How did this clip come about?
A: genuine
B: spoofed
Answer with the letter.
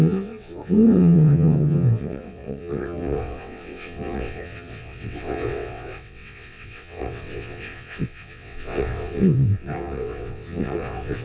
B